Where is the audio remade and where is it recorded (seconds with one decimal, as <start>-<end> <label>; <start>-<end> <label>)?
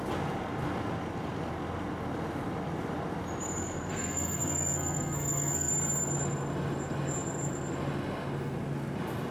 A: 0.0-3.9 recorded; 3.9-5.7 remade; 5.7-9.3 recorded